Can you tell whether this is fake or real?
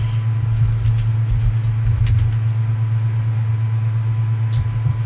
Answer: real